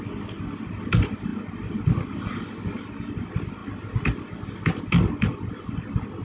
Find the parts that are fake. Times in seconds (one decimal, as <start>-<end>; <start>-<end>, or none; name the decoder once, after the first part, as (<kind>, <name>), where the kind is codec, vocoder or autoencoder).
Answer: none

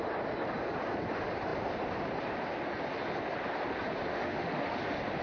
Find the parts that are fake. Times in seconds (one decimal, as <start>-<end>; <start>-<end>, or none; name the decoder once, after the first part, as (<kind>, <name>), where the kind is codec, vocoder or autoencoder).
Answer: 4.1-4.8 (autoencoder, DAC-VAE)

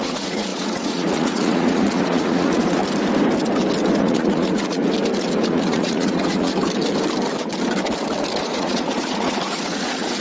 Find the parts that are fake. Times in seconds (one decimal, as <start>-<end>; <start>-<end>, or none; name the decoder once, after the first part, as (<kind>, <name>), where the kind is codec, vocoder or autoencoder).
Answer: 0.0-2.8 (vocoder, Vocos); 4.0-4.8; 5.5-6.6; 8.4-10.2

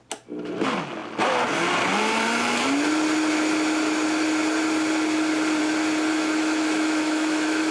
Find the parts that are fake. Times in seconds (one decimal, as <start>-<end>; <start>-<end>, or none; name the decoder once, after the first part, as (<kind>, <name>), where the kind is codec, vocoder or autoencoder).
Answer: 6.1-7.7 (autoencoder, DAC-VAE)

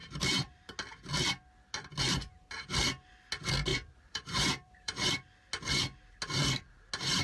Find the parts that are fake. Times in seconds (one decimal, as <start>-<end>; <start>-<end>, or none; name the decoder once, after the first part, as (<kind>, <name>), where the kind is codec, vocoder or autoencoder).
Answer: 0.0-0.6 (vocoder, BigVGAN v2); 3.7-5.1

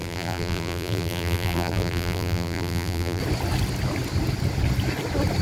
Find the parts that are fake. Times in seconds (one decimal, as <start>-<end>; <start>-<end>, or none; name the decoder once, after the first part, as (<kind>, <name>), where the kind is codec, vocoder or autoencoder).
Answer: 0.0-3.2 (vocoder, BigVGAN v2)

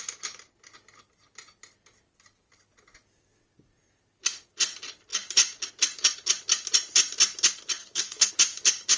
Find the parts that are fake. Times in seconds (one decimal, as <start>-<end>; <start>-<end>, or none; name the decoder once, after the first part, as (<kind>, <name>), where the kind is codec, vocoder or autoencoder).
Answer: 7.8-8.3 (codec, SNAC)